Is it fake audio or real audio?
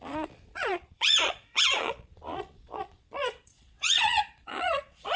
fake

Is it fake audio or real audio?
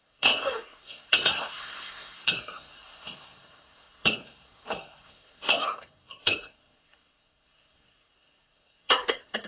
fake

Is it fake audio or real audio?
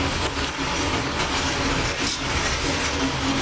real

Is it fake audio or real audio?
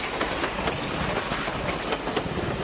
real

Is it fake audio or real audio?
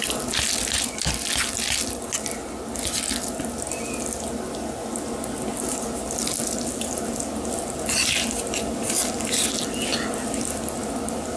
real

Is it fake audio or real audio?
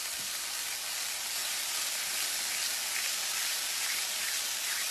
real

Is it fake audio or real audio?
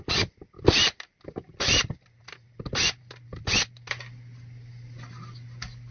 real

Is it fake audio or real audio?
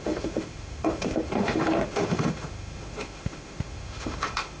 fake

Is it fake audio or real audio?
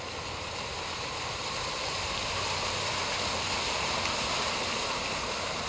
real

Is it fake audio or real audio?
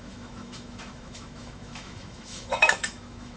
fake